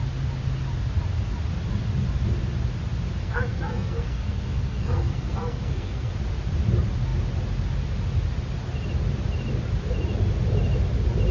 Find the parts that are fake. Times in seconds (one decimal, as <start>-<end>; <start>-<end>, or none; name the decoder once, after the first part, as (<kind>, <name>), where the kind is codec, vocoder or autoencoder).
3.2-6.1 (codec, SNAC)